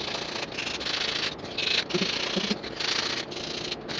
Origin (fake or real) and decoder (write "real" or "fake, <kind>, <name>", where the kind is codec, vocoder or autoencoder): real